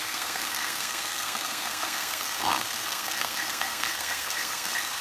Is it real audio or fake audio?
fake